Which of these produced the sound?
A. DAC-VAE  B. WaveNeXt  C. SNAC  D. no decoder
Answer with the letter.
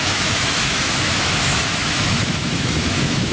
A